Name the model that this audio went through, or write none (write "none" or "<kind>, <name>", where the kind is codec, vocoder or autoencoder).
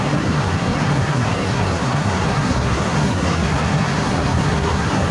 codec, SNAC